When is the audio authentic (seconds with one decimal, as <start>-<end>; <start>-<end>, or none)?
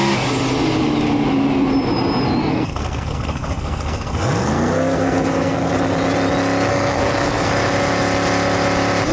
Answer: 0.0-2.4; 5.7-6.7; 7.5-9.1